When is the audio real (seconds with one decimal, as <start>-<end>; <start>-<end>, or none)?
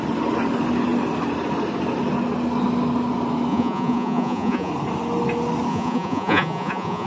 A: 0.0-3.5; 4.7-5.7